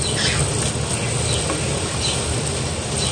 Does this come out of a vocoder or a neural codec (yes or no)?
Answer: no